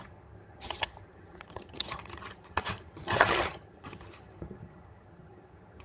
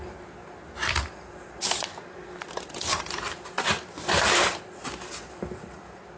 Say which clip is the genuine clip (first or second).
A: second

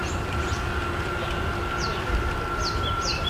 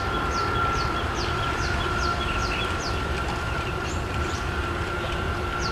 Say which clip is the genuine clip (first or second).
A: first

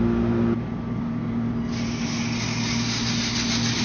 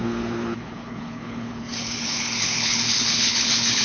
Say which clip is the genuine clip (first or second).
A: first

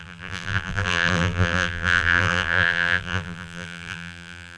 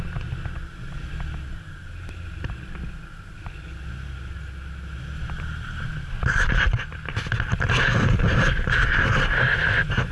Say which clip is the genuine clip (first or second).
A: second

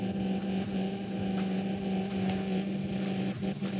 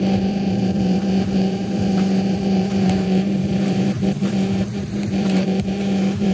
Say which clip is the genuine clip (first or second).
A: first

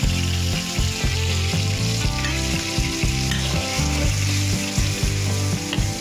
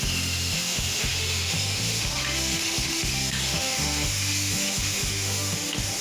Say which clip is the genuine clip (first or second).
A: first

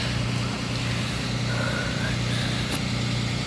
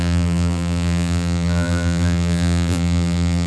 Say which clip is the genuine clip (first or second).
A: first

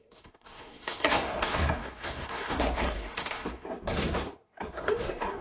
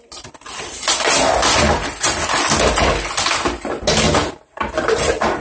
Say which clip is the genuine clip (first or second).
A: second